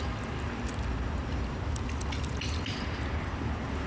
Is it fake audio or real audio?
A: real